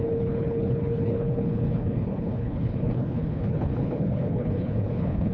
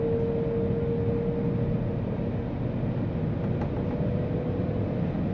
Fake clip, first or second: first